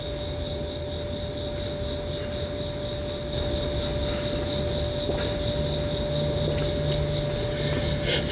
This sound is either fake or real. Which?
real